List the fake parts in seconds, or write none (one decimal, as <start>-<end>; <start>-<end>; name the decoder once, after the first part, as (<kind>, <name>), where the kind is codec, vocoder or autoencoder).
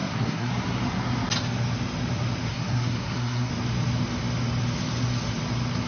0.0-0.5 (codec, SNAC); 2.5-3.5